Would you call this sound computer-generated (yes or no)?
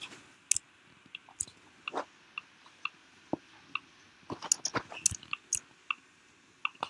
no